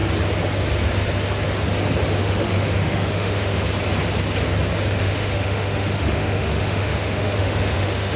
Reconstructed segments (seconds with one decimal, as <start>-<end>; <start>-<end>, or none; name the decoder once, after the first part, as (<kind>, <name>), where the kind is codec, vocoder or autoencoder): 2.2-3.6 (autoencoder, DAC-VAE); 4.9-8.2